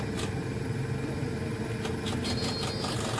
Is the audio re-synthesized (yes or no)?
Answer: no